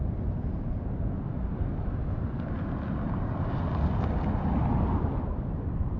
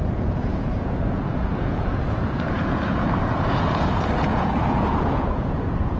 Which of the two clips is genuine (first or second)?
first